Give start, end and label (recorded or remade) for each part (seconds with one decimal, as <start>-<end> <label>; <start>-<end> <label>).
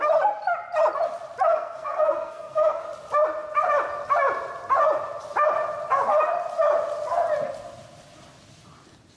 0.0-1.5 recorded; 1.5-2.8 remade; 2.8-9.2 recorded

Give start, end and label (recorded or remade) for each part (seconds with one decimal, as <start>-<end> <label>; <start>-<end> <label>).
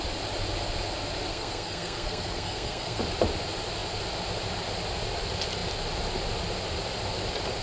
0.0-1.3 recorded; 1.3-3.0 remade; 3.0-7.6 recorded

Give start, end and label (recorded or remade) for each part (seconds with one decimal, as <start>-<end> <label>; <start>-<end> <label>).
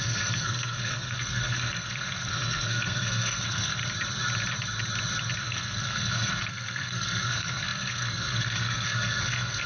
0.0-3.8 remade; 3.8-5.4 recorded; 5.4-9.7 remade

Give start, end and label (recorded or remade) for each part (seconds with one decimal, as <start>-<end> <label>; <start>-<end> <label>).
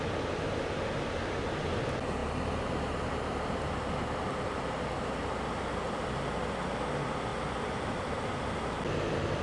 0.0-9.4 recorded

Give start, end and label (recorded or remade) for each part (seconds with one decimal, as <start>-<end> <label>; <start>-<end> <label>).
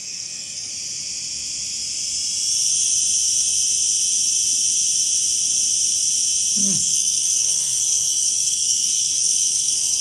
0.0-0.7 remade; 0.7-6.6 recorded; 6.6-10.0 remade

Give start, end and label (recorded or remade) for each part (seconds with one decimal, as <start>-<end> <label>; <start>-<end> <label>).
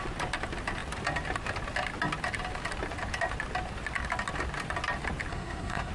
0.0-5.3 recorded; 5.3-5.9 remade